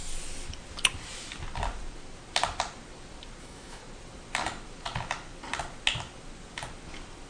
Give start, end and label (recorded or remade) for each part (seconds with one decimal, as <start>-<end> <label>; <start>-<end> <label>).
0.0-3.4 recorded; 3.4-3.8 remade; 3.8-7.3 recorded